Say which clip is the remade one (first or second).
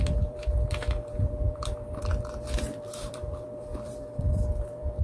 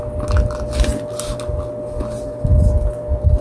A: first